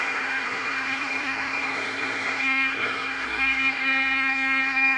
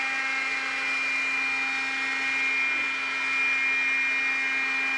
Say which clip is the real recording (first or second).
second